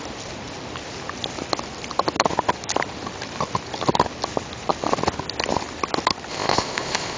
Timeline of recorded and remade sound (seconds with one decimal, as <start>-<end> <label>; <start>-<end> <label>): 0.0-6.3 recorded; 6.3-7.2 remade